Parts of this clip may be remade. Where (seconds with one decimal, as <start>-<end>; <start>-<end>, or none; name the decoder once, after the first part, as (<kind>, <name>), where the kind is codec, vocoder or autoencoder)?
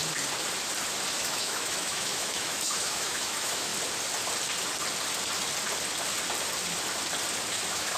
1.2-3.7 (autoencoder, DAC-VAE); 7.5-8.0